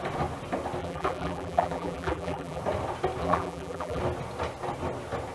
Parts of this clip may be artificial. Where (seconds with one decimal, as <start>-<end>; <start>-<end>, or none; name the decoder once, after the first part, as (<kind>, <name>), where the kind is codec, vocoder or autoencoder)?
0.8-2.6 (vocoder, BigVGAN v2); 3.2-4.0